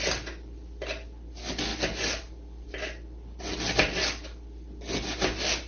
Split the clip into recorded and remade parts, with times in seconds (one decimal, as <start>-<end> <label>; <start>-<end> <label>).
0.0-5.7 recorded